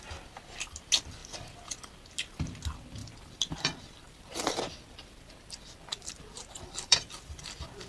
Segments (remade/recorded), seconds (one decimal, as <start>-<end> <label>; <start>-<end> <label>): 0.0-3.0 recorded; 3.0-7.9 remade